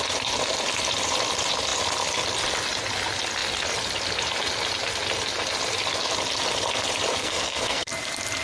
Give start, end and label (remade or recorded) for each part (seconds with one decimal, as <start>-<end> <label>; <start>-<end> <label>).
0.0-7.2 recorded; 7.2-7.9 remade; 7.9-8.4 recorded